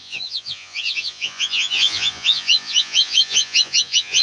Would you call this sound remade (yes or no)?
yes